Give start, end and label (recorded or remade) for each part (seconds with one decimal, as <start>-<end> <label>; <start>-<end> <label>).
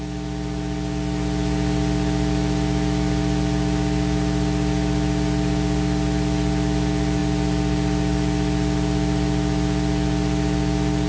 0.0-11.1 recorded